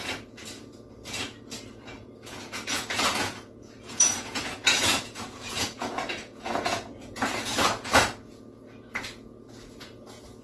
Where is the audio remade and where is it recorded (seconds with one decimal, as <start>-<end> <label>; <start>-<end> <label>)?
0.0-0.4 remade; 0.4-1.7 recorded; 1.7-10.4 remade